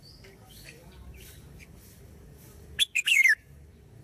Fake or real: fake